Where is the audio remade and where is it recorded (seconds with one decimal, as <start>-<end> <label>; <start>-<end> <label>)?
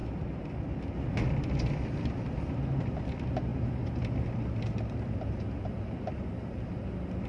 0.0-7.3 recorded